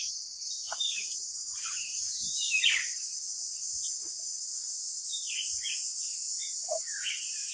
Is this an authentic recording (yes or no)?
yes